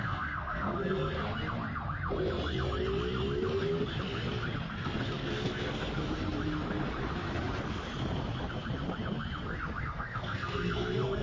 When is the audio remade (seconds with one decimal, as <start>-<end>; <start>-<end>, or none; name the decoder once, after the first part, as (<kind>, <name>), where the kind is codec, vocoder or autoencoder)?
0.0-1.2 (codec, SNAC); 4.7-6.0; 9.8-11.2